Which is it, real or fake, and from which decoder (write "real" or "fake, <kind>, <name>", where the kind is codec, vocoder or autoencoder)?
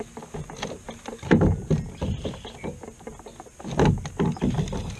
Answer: real